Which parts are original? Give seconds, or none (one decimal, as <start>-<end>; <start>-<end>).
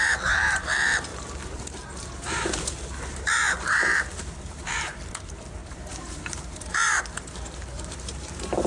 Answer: none